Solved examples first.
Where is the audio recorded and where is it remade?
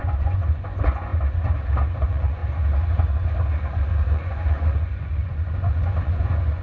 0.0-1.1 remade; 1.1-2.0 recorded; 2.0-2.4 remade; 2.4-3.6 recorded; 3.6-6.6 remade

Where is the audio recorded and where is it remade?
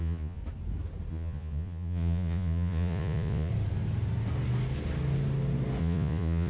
0.0-0.4 remade; 0.4-1.1 recorded; 1.1-3.5 remade; 3.5-5.8 recorded; 5.8-6.5 remade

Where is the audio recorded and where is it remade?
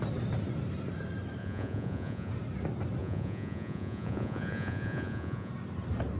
0.0-1.4 recorded; 1.4-2.3 remade; 2.3-3.0 recorded; 3.0-5.5 remade; 5.5-6.2 recorded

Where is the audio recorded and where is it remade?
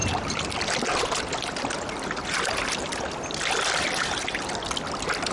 0.0-5.3 recorded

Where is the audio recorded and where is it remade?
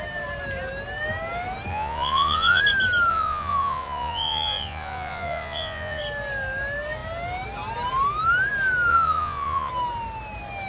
0.0-1.7 recorded; 1.7-2.6 remade; 2.6-3.1 recorded; 3.1-6.0 remade; 6.0-8.9 recorded; 8.9-9.7 remade; 9.7-10.7 recorded